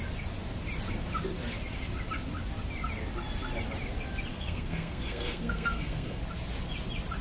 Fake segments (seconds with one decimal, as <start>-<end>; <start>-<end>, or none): 4.3-6.2